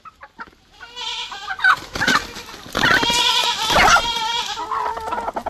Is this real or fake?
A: real